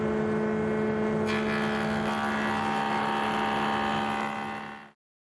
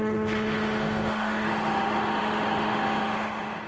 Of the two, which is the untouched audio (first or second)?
first